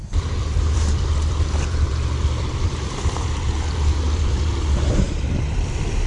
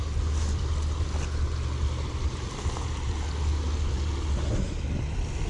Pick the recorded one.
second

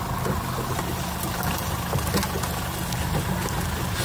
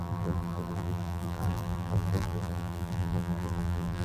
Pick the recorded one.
first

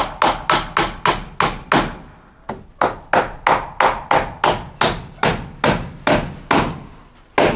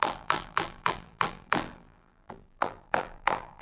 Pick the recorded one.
first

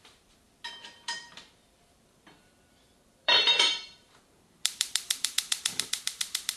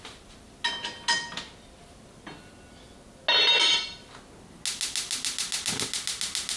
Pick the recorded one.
second